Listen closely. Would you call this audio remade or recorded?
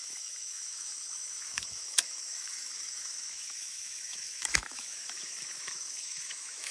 remade